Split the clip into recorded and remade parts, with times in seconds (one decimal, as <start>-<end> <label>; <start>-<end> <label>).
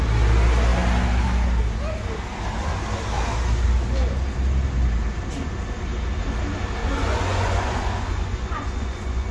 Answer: 0.0-6.8 recorded; 6.8-9.3 remade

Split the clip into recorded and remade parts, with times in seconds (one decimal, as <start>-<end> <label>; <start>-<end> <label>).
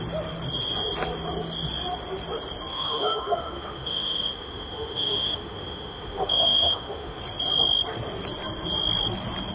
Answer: 0.0-2.7 recorded; 2.7-7.2 remade; 7.2-9.5 recorded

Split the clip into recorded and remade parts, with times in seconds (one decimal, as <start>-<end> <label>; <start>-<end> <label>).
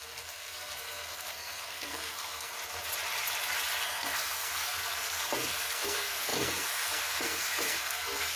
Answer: 0.0-2.5 remade; 2.5-3.8 recorded; 3.8-8.4 remade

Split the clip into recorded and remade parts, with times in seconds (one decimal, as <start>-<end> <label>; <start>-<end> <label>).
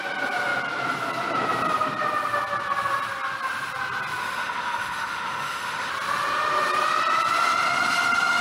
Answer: 0.0-4.2 recorded; 4.2-5.9 remade; 5.9-8.4 recorded